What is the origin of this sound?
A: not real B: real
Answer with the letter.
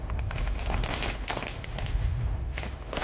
A